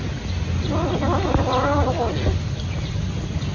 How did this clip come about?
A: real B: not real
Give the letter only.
A